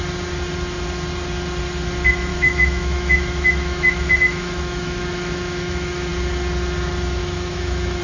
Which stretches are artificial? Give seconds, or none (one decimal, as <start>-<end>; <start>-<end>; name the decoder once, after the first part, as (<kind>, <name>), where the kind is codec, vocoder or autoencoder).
2.3-6.1 (autoencoder, DAC-VAE); 7.2-8.0